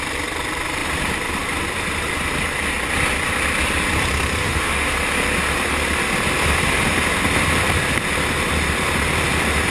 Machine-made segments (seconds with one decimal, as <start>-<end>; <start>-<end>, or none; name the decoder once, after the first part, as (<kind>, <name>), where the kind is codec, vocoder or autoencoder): 4.4-4.9 (autoencoder, DAC-VAE)